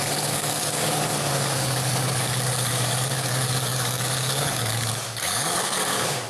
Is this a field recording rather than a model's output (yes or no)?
no